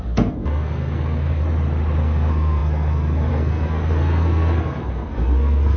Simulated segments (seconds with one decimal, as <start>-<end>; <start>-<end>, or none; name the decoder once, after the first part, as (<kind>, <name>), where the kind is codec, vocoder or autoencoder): 0.0-1.4 (codec, SNAC); 2.0-5.8